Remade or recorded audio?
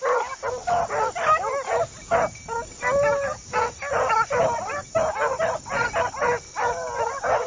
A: recorded